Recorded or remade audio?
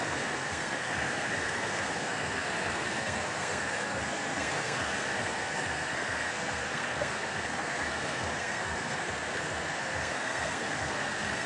remade